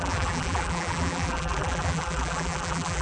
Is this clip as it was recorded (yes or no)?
no